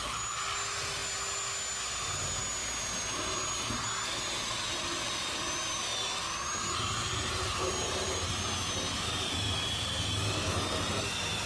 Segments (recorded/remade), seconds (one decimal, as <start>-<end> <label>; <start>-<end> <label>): 0.0-11.5 recorded